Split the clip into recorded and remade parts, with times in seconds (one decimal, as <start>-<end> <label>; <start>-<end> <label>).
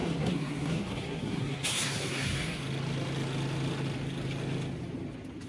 0.0-2.6 remade; 2.6-5.5 recorded